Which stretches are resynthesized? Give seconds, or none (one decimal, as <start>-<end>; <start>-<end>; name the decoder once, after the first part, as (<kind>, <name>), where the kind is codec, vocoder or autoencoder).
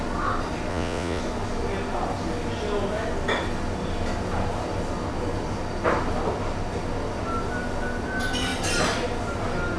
0.7-1.2 (vocoder, Vocos)